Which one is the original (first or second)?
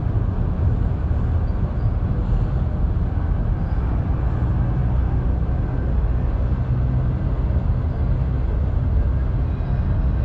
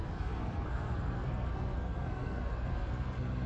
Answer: first